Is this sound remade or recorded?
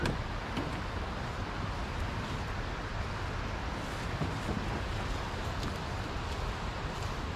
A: recorded